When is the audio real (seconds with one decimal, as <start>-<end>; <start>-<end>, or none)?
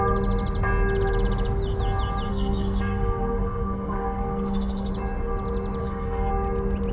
0.0-2.3; 4.9-5.8; 6.3-6.9